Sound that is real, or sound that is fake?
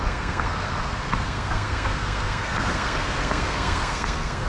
fake